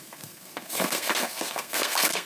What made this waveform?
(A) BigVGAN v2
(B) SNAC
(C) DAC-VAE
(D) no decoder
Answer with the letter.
B